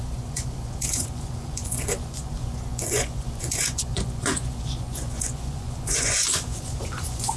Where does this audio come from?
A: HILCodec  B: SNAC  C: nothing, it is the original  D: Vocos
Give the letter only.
D